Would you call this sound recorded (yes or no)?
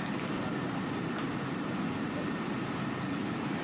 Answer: no